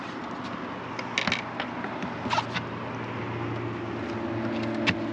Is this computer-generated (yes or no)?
no